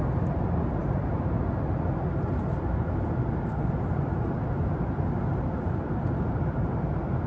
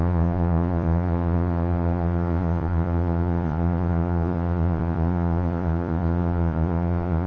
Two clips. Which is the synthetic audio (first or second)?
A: second